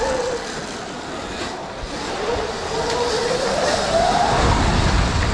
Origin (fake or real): real